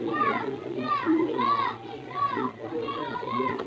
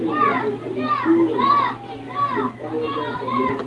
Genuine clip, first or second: second